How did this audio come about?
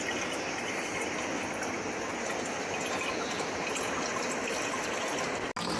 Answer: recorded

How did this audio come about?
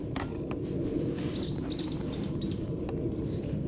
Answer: recorded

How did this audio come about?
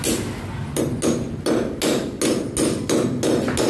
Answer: recorded